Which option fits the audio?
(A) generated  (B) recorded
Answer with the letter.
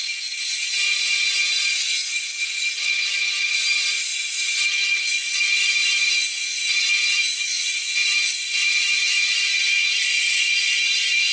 A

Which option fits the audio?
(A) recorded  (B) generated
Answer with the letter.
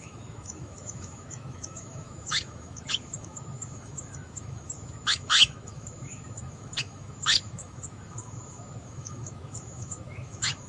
B